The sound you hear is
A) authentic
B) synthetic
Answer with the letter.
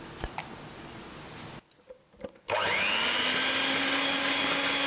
A